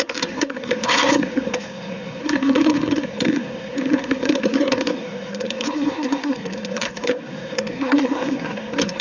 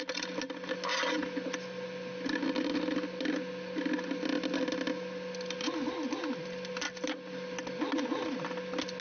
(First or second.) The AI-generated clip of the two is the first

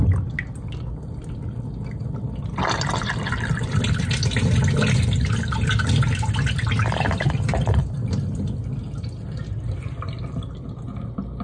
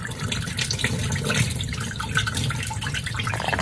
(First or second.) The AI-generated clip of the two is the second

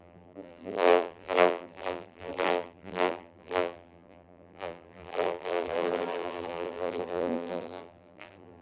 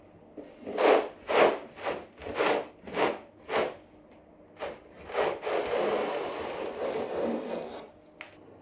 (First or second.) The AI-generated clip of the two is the first